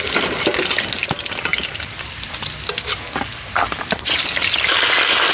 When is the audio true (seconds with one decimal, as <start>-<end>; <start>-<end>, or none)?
0.0-1.0; 4.2-5.3